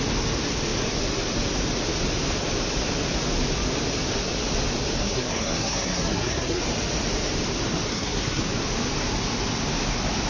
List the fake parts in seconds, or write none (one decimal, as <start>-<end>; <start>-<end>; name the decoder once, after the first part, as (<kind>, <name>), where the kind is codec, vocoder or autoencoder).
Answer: 5.0-6.6 (codec, SNAC); 7.9-8.4